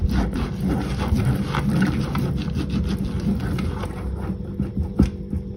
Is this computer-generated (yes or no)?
no